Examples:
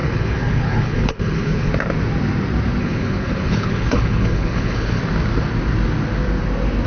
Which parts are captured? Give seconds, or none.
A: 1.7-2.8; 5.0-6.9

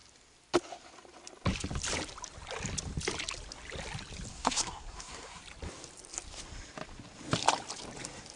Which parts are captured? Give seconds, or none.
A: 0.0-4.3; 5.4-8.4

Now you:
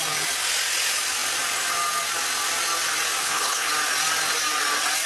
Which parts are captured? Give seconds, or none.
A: 0.0-3.2; 3.7-5.1